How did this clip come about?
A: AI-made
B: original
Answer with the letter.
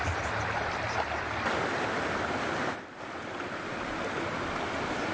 B